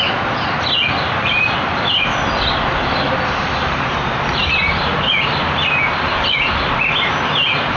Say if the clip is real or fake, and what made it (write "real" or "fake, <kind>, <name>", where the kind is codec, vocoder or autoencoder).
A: real